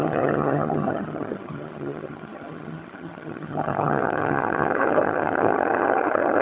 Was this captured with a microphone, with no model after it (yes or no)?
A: no